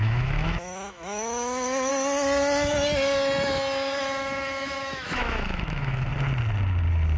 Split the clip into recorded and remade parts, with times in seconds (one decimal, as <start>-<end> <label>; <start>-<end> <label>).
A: 0.0-1.9 remade; 1.9-4.0 recorded; 4.0-6.1 remade; 6.1-7.2 recorded